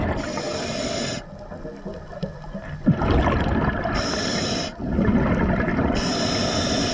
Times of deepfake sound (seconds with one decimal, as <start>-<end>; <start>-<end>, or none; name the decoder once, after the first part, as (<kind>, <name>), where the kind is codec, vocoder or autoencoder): none

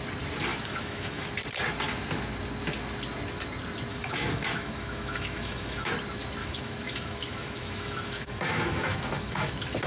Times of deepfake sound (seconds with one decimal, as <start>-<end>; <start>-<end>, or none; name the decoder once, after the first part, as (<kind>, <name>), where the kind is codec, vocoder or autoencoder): 0.5-1.3 (autoencoder, DAC-VAE); 3.9-5.9; 6.4-9.5

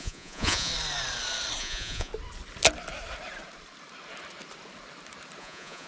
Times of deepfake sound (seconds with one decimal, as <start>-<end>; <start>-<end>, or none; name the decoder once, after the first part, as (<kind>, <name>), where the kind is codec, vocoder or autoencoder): 0.0-0.7 (vocoder, Vocos); 1.6-2.1; 5.4-5.9

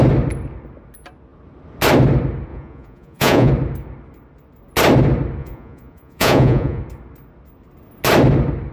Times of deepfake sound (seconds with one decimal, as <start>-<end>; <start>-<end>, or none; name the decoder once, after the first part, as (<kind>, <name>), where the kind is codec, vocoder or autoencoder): 2.5-3.5 (vocoder, Vocos); 5.4-6.8

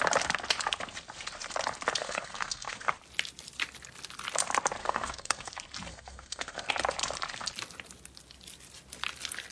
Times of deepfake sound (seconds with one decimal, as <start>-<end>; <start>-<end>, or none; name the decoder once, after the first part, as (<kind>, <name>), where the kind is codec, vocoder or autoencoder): 2.0-2.9 (codec, SNAC); 4.8-5.5; 5.9-6.7

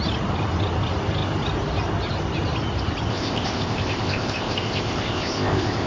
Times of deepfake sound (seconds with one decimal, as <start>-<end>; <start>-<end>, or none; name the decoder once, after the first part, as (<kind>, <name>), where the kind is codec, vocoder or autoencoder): 3.1-5.9 (codec, ZipCodec)

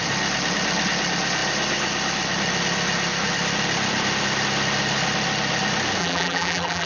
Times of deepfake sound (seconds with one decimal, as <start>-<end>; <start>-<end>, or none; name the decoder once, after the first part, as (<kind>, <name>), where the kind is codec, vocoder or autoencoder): 6.0-6.9 (vocoder, BigVGAN v2)

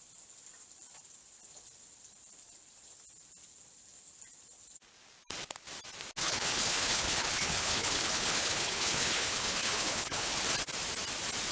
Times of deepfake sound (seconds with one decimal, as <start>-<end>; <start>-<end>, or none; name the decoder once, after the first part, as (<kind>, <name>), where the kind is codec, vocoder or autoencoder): 6.2-10.4 (codec, HILCodec)